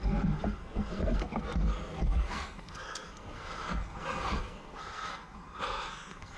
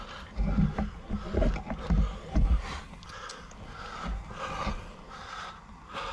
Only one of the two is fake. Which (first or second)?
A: first